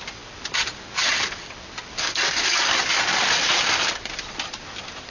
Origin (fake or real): real